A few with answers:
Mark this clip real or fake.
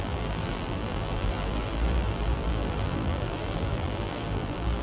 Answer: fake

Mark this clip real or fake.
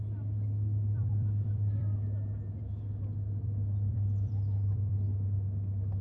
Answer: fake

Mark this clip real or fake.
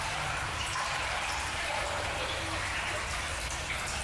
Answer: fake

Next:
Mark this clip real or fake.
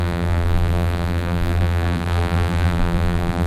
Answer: fake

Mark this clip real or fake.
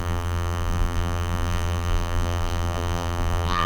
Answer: fake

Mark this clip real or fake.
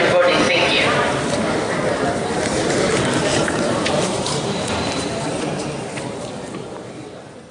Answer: fake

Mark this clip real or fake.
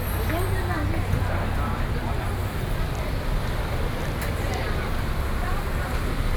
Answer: real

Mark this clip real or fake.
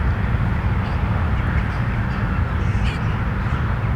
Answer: fake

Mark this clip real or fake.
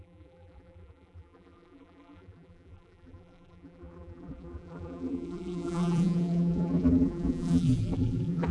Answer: fake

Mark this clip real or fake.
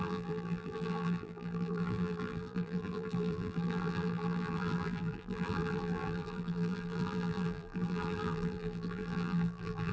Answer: fake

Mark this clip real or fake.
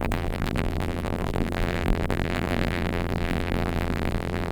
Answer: fake